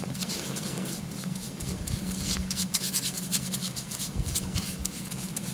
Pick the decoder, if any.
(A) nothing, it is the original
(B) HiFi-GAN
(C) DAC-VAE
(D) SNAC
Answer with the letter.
D